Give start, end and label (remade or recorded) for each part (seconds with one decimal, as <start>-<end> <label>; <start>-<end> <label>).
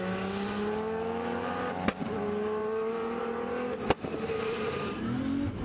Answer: 0.0-2.6 recorded; 2.6-5.0 remade; 5.0-5.6 recorded